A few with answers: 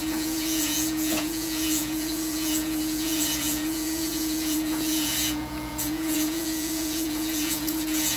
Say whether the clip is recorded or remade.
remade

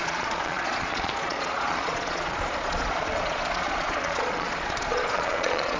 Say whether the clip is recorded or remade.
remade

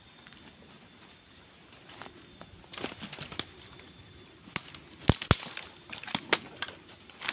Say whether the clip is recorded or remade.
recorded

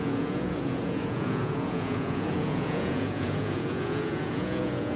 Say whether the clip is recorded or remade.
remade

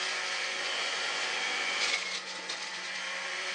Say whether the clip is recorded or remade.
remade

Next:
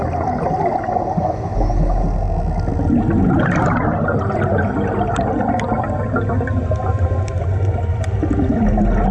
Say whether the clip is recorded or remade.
recorded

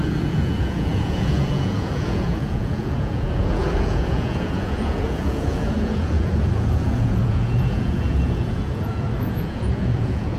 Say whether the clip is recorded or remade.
remade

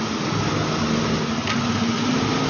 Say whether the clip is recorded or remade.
recorded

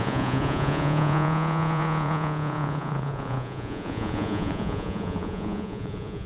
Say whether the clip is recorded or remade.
remade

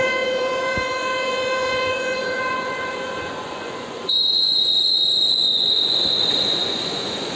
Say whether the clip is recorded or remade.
remade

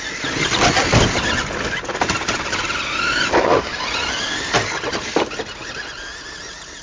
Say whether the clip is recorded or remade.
recorded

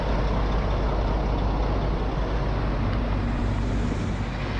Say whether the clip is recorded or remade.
recorded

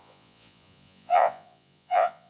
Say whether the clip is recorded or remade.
remade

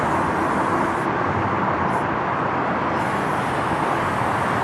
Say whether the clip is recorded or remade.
recorded